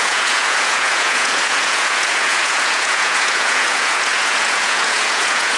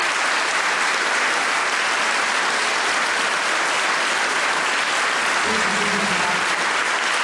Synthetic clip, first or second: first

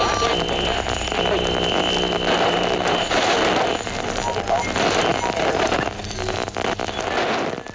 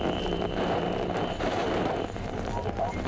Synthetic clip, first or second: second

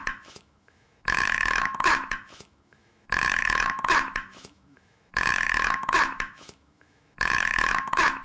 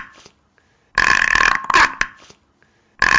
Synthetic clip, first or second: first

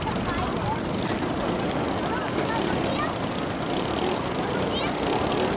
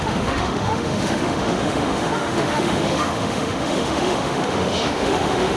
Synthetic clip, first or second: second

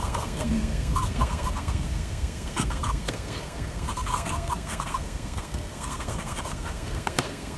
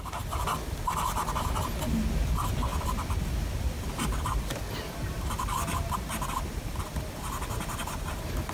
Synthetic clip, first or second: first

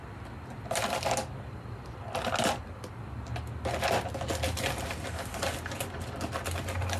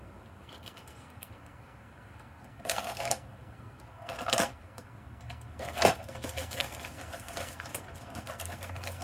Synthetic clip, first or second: second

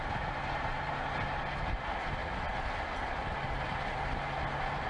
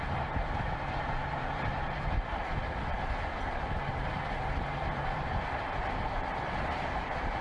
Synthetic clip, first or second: second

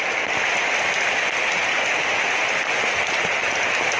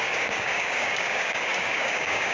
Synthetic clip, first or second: second